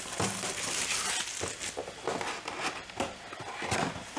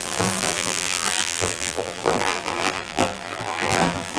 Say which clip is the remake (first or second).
second